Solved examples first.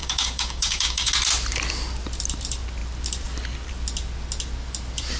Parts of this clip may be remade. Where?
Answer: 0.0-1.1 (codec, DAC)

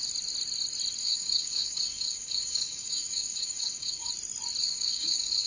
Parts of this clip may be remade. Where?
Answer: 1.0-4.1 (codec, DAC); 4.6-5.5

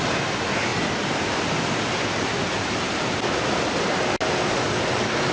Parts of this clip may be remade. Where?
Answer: none

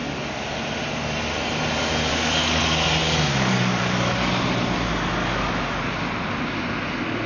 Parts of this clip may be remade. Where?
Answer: 0.0-0.6 (codec, DAC); 2.1-2.6; 3.0-4.3; 5.2-5.8

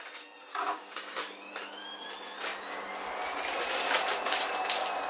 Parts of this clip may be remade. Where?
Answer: 0.5-1.2 (codec, DAC)

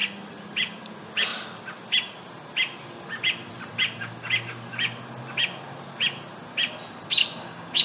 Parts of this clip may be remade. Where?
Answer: 7.2-7.8 (codec, DAC)